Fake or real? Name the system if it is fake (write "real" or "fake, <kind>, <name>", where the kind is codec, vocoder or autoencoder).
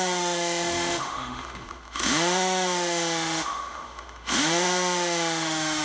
fake, autoencoder, DAC-VAE